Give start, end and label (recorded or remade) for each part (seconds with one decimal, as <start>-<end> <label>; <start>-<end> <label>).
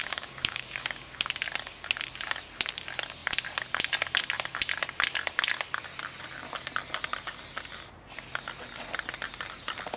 0.0-1.3 remade; 1.3-10.0 recorded